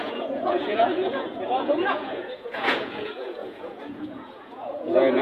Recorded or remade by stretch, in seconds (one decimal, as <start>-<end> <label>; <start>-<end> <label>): 0.0-5.2 remade